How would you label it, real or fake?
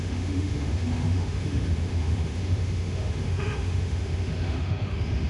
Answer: fake